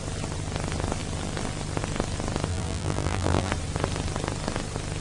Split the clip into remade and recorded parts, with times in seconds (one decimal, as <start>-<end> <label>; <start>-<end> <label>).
0.0-2.5 recorded; 2.5-3.5 remade; 3.5-5.0 recorded